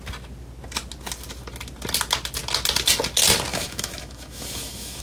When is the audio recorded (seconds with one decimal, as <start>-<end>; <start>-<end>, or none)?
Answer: 0.0-3.5